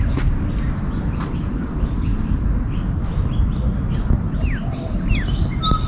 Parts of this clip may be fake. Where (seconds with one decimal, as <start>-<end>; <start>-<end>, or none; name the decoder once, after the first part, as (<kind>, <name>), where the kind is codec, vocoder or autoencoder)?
none